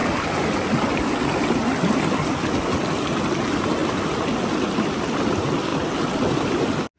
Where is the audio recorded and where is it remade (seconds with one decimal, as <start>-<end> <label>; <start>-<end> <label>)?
0.0-7.0 recorded